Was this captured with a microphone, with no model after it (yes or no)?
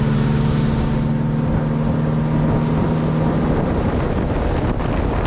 yes